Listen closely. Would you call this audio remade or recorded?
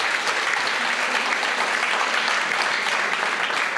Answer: recorded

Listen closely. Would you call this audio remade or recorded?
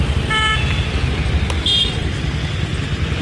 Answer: recorded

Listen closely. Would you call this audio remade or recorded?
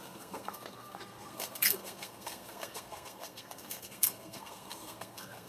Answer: remade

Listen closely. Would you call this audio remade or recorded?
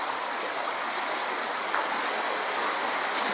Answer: recorded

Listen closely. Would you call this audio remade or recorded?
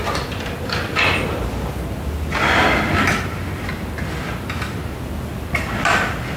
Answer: recorded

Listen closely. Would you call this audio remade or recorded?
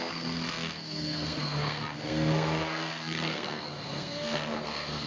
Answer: remade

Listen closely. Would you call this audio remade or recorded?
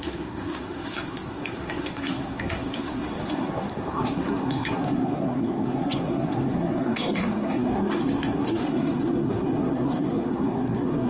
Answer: remade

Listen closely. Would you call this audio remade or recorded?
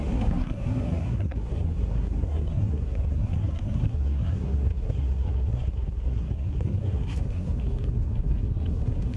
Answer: remade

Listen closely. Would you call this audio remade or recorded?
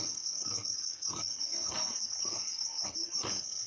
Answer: remade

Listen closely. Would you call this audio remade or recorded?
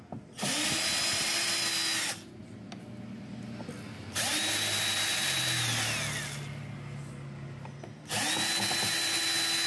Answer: recorded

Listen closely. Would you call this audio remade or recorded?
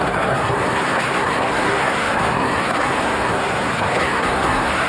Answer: remade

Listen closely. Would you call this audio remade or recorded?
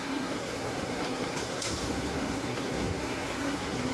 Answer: remade